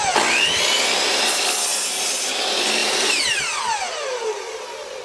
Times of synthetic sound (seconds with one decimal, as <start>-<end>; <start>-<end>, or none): 1.7-2.3; 2.8-5.0